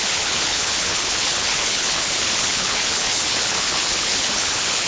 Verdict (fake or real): fake